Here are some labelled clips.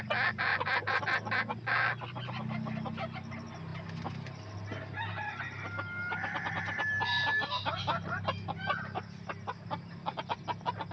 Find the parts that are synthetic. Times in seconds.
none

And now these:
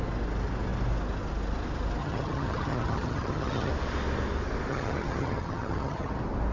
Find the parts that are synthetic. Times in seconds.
2.0-3.7; 4.7-6.1